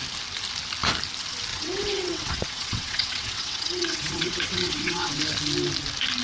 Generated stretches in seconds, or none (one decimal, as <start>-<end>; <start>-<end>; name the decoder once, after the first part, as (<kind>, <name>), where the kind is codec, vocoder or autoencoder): 1.5-5.2 (vocoder, WaveNeXt)